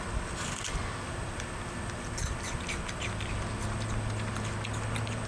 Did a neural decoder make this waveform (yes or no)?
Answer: no